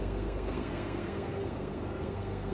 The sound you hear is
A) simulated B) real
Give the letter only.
A